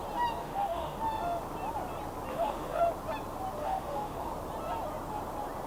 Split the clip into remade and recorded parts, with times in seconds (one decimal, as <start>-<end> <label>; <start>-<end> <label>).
0.0-0.4 recorded; 0.4-1.0 remade; 1.0-2.3 recorded; 2.3-2.8 remade; 2.8-3.6 recorded; 3.6-4.3 remade; 4.3-5.7 recorded

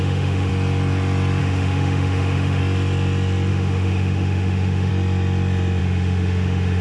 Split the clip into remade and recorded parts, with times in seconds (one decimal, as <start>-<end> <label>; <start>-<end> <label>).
0.0-0.5 remade; 0.5-1.4 recorded; 1.4-2.6 remade; 2.6-3.5 recorded; 3.5-4.9 remade; 4.9-5.8 recorded; 5.8-6.8 remade

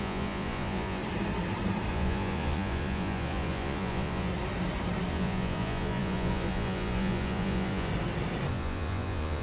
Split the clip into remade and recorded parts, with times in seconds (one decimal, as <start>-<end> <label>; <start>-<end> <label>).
0.0-1.0 remade; 1.0-1.9 recorded; 1.9-4.3 remade; 4.3-5.1 recorded; 5.1-7.9 remade; 7.9-8.5 recorded; 8.5-9.4 remade

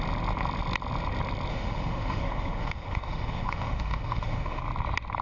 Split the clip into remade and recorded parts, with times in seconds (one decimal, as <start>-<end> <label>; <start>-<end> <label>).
0.0-1.5 recorded; 1.5-4.6 remade; 4.6-5.2 recorded

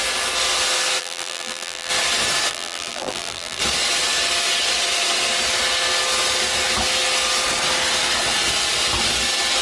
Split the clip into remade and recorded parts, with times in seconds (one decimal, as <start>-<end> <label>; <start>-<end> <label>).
0.0-1.0 recorded; 1.0-1.9 remade; 1.9-2.5 recorded; 2.5-3.6 remade; 3.6-9.6 recorded

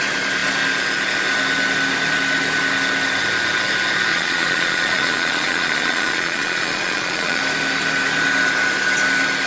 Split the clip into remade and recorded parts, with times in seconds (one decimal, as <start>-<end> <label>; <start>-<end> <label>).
0.0-4.1 recorded; 4.1-7.4 remade; 7.4-9.5 recorded